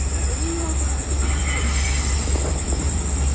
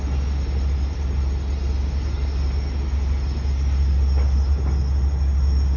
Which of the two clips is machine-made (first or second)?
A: first